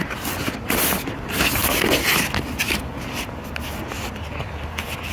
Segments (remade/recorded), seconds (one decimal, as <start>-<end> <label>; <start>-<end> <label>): 0.0-5.1 recorded